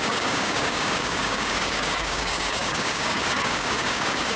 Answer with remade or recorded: remade